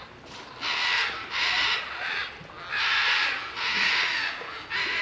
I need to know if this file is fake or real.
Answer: real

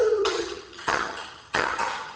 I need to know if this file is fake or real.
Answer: fake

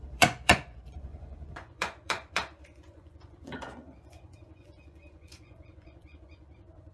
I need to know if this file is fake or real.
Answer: fake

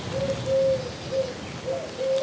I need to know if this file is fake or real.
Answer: real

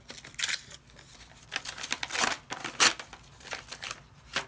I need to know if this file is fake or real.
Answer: real